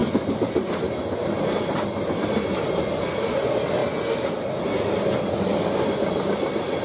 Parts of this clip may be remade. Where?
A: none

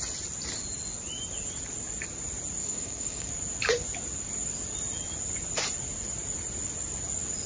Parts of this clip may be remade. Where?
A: 2.6-3.3 (codec, DAC)